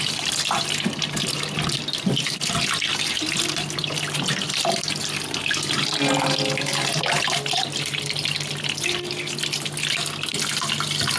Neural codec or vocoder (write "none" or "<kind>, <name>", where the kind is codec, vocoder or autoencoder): none